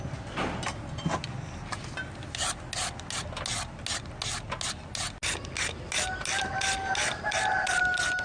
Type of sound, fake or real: real